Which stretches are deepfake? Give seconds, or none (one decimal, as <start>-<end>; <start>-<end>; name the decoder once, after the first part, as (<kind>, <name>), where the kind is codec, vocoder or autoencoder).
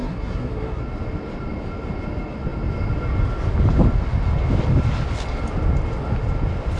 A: 0.0-0.8 (codec, SNAC)